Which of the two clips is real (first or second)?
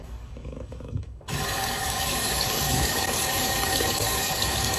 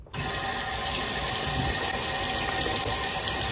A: second